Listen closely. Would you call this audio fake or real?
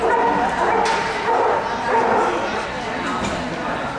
real